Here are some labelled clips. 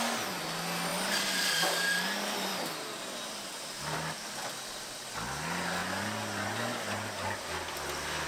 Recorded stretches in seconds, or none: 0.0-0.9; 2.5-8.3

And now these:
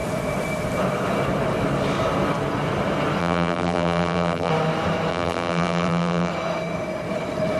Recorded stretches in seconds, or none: 0.0-3.2; 4.5-5.1; 6.3-7.6

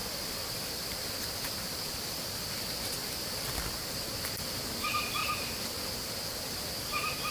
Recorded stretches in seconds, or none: 2.5-3.0; 3.9-7.3